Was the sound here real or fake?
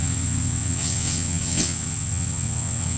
fake